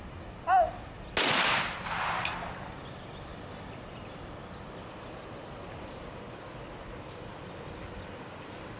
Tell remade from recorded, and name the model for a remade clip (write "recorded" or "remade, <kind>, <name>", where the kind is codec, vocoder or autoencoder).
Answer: recorded